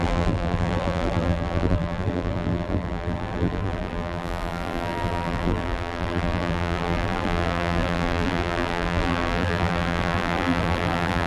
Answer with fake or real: fake